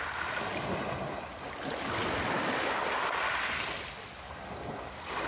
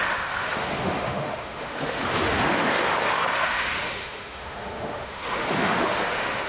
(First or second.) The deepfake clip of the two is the second